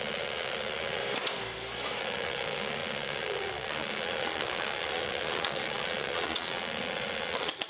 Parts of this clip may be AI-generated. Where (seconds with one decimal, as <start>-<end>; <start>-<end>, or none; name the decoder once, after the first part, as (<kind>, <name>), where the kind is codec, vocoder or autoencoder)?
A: 0.0-1.0 (vocoder, Vocos); 2.0-7.7

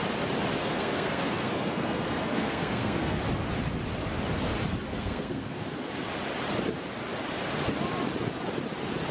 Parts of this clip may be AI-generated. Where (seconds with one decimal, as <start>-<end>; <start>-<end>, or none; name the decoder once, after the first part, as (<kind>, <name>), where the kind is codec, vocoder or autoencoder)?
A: 0.6-3.2 (codec, SNAC); 4.9-5.9

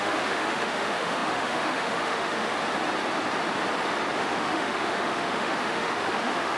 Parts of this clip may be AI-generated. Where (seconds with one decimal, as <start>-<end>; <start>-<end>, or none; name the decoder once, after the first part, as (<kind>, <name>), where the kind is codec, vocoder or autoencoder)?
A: 0.0-2.5 (autoencoder, DAC-VAE); 4.2-6.6

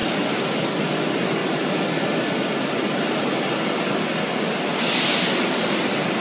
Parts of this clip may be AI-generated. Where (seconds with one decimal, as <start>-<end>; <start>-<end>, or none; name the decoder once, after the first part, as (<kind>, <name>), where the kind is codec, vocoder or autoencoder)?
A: none

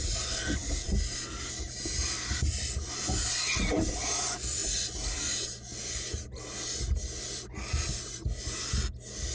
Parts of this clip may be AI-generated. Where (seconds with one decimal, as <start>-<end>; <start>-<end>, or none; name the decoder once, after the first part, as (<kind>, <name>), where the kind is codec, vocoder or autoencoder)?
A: none

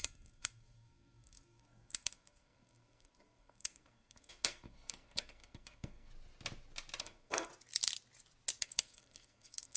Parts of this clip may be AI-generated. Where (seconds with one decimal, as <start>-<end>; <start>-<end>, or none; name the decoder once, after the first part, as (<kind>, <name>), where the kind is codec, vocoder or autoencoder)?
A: 0.0-6.1 (codec, SNAC); 7.0-7.5; 8.6-9.8

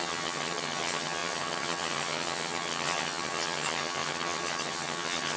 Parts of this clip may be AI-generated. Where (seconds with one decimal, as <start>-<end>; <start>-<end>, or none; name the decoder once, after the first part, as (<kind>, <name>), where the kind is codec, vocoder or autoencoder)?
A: 0.0-5.4 (vocoder, HiFi-GAN)